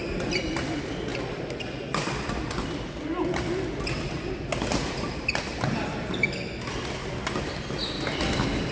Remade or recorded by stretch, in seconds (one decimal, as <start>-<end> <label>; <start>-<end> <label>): 0.0-8.7 recorded